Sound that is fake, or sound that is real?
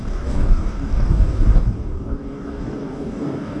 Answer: fake